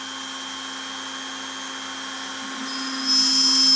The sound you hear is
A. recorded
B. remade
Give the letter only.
A